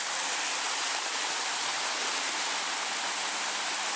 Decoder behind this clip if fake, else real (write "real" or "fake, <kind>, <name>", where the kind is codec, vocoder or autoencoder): real